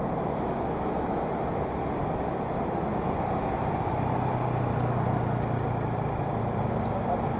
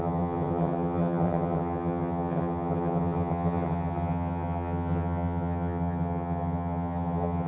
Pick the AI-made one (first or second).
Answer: second